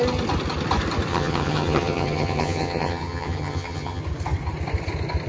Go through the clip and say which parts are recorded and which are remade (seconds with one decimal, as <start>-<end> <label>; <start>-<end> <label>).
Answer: 0.0-1.1 recorded; 1.1-4.0 remade; 4.0-5.3 recorded